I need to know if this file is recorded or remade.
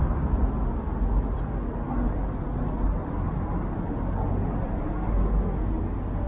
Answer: recorded